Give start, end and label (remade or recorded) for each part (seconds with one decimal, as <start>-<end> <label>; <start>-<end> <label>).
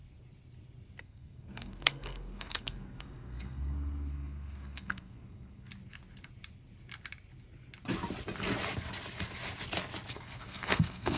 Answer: 0.0-1.0 recorded; 1.0-5.7 remade; 5.7-10.1 recorded; 10.1-11.2 remade